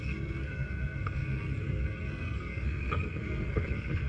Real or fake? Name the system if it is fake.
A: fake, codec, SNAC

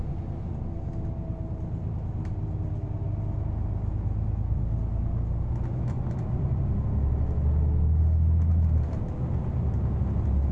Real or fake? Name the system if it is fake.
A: real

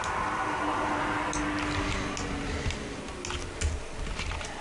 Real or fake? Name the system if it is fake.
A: real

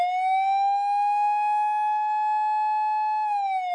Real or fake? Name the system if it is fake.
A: real